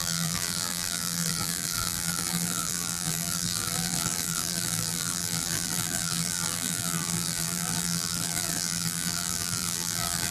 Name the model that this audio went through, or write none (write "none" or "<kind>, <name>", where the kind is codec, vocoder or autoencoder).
vocoder, BigVGAN v2